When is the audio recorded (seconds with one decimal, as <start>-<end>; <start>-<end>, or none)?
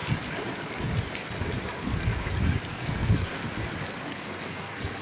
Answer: 0.0-2.7; 3.4-4.1